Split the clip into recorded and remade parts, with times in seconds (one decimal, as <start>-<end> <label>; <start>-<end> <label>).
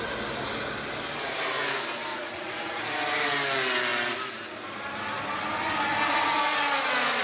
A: 0.0-2.1 recorded; 2.1-2.8 remade; 2.8-7.2 recorded